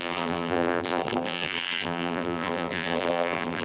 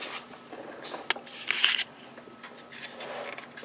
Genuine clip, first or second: second